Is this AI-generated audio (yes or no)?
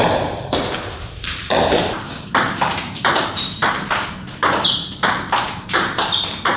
yes